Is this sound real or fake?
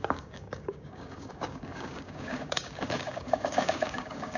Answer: fake